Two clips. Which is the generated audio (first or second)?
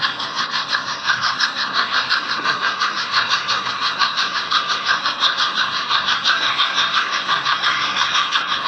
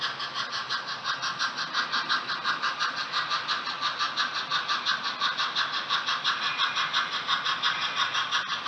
first